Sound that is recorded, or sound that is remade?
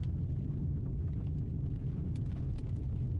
recorded